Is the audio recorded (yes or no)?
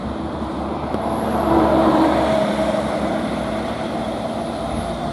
no